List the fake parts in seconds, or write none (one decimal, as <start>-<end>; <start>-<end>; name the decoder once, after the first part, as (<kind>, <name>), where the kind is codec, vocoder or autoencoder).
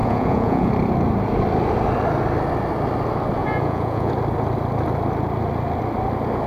0.0-0.7 (vocoder, Vocos); 3.4-4.1